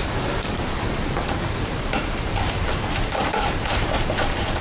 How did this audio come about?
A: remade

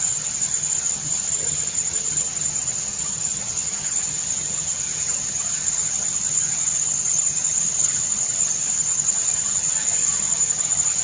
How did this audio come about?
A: remade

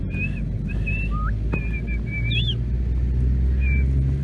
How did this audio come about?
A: recorded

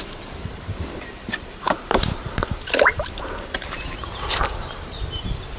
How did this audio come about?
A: remade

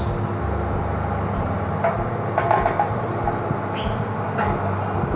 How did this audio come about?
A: recorded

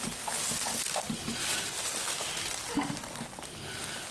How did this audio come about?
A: recorded